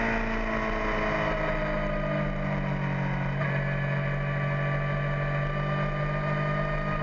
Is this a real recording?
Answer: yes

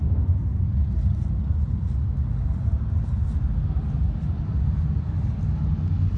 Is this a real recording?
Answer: yes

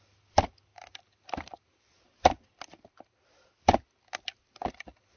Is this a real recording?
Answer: yes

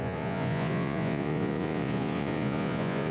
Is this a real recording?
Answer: no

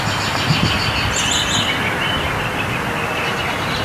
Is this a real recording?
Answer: yes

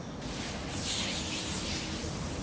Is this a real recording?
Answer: yes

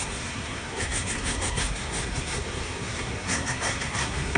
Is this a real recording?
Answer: no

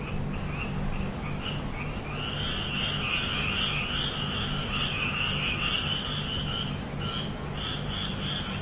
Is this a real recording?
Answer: yes